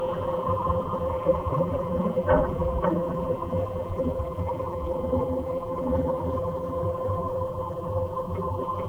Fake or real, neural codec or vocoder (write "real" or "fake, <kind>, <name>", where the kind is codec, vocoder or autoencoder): fake, vocoder, BigVGAN v2